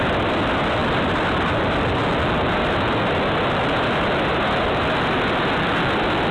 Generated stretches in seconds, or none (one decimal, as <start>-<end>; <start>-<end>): none